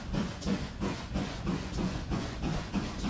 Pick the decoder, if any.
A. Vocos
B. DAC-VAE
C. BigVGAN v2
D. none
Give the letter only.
A